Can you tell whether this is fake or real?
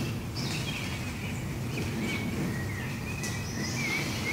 real